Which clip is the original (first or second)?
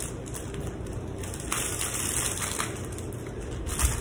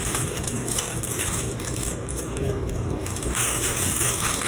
first